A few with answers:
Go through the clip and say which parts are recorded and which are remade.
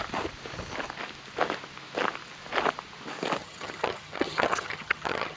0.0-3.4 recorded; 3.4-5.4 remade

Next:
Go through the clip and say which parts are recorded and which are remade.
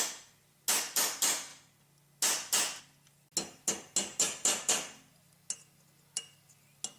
0.0-7.0 recorded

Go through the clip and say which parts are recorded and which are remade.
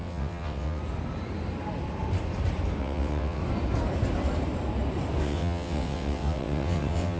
0.0-0.8 remade; 0.8-2.8 recorded; 2.8-3.4 remade; 3.4-5.2 recorded; 5.2-7.2 remade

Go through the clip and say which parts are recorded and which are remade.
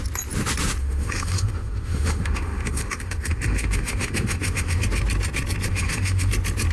0.0-0.8 recorded; 0.8-4.8 remade; 4.8-5.7 recorded; 5.7-6.3 remade; 6.3-6.7 recorded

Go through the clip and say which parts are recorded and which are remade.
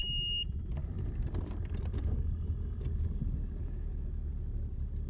0.0-3.6 recorded; 3.6-4.3 remade; 4.3-5.1 recorded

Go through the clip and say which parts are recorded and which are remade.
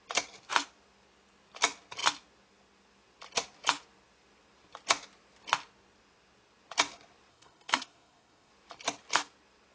0.0-7.3 recorded; 7.3-8.5 remade; 8.5-9.7 recorded